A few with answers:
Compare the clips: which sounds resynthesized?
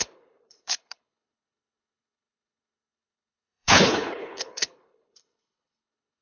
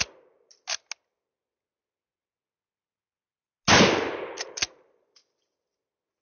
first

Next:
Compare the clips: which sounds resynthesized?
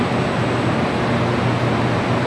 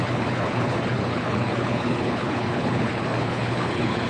second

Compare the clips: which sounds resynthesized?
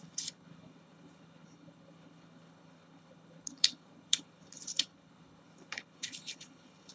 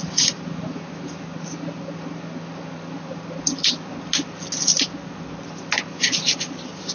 first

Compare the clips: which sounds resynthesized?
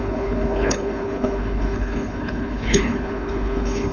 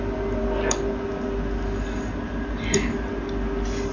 first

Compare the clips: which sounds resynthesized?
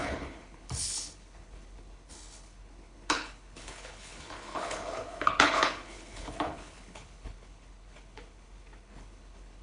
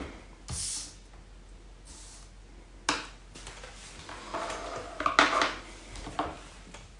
first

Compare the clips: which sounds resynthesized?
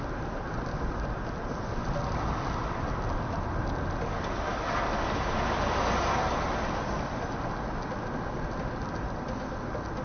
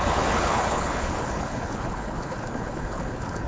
second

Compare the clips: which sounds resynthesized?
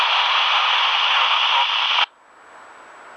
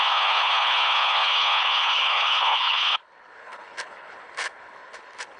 second